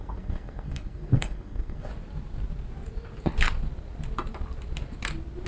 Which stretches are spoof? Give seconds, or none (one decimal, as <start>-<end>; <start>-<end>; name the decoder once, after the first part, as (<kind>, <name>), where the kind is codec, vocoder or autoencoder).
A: 0.0-1.9 (codec, SNAC)